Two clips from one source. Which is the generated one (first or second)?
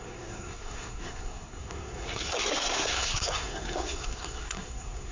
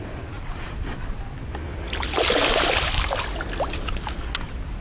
first